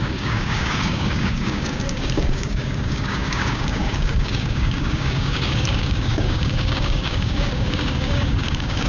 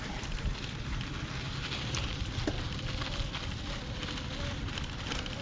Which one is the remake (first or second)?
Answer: first